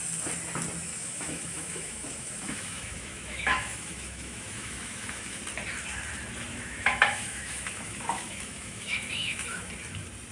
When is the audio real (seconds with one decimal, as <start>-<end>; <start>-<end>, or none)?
0.0-0.9; 5.4-6.5; 9.7-10.3